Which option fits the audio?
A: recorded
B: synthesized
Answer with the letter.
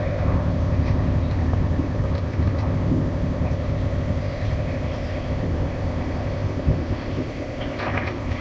B